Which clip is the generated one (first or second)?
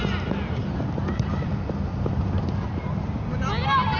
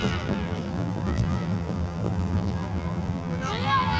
second